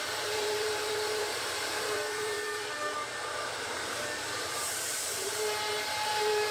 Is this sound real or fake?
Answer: fake